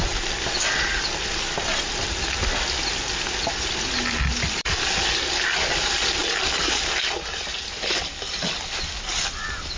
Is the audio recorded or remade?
recorded